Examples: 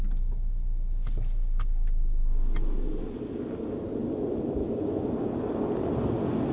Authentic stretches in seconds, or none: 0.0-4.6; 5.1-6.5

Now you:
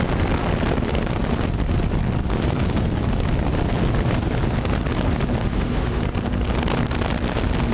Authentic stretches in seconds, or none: 0.0-5.5; 6.0-7.7